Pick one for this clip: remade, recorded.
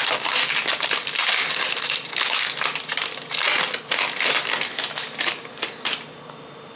recorded